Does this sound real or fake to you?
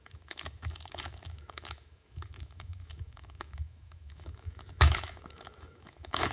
fake